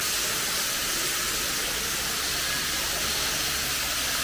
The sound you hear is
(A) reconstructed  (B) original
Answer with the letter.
B